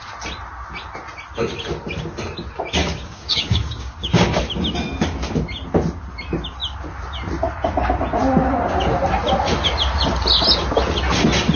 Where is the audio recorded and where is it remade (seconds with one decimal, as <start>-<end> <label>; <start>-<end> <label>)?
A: 0.0-2.8 recorded; 2.8-4.4 remade; 4.4-11.6 recorded